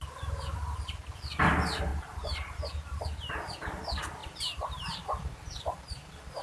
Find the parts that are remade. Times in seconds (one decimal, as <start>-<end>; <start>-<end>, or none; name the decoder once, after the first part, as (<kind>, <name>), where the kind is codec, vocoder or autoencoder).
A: 1.9-3.2 (vocoder, BigVGAN v2); 4.2-6.4